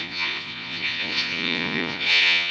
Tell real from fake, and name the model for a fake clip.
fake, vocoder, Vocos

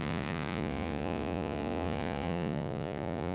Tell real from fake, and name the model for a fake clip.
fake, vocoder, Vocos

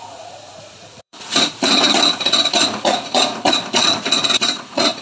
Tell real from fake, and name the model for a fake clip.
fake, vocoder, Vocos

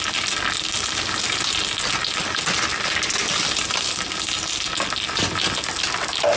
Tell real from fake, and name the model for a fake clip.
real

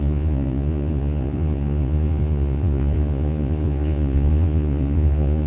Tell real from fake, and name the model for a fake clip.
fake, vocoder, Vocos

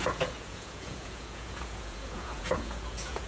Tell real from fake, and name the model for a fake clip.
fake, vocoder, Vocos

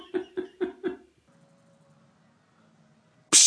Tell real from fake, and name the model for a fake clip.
real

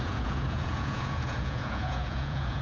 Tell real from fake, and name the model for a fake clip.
fake, vocoder, Vocos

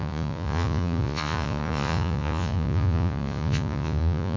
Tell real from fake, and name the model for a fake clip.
fake, vocoder, Vocos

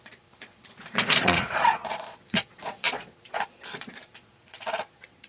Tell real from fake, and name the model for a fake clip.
fake, vocoder, Vocos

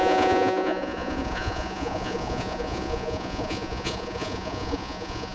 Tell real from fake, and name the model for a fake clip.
fake, vocoder, Vocos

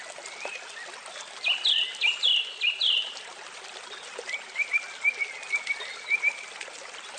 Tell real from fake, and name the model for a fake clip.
real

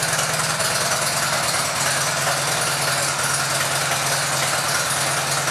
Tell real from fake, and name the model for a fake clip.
real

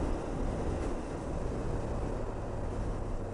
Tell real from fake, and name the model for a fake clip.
real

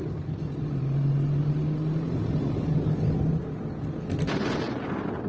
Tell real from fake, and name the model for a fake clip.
real